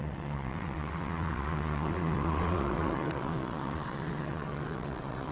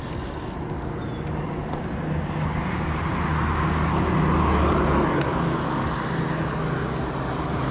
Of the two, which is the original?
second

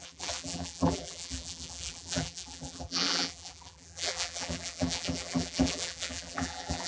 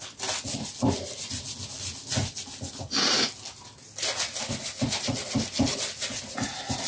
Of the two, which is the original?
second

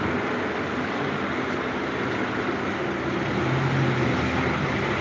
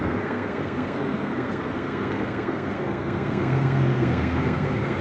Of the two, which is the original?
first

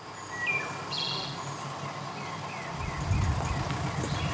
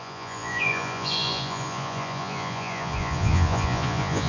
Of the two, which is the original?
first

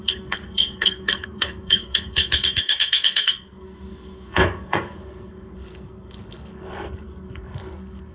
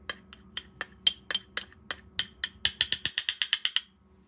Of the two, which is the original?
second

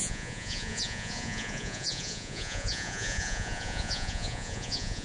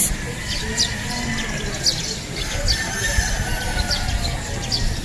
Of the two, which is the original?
second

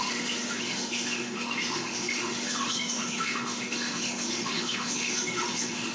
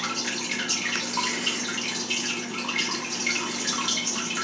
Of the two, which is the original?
second